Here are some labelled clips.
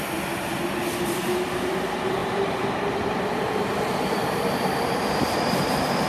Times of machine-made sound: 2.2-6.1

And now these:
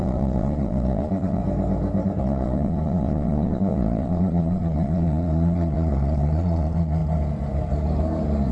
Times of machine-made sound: 0.0-1.4; 2.2-7.0

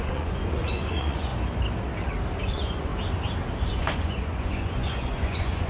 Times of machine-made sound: 0.0-1.3; 2.4-2.9; 3.7-5.7

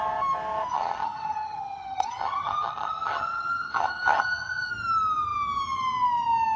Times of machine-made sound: 0.7-4.7

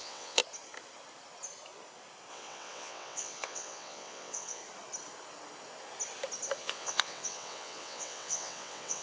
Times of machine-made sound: 0.0-0.4; 2.3-4.6; 6.6-9.0

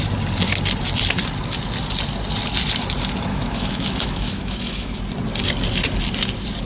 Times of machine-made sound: 3.3-5.0